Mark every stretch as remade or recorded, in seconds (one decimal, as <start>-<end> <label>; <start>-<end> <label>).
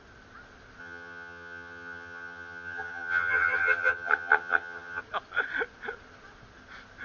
0.0-0.8 recorded; 0.8-5.0 remade; 5.0-7.0 recorded